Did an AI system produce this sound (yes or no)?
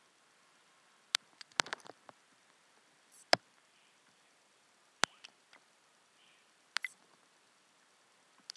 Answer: yes